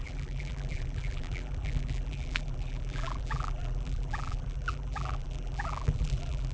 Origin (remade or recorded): remade